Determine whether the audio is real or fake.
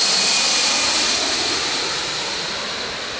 real